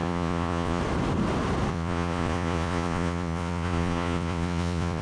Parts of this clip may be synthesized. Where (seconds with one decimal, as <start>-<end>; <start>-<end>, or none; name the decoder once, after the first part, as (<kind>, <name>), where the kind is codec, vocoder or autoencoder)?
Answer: 0.0-0.8 (vocoder, Vocos); 1.7-5.0